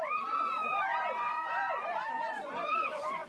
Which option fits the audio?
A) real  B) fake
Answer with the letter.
B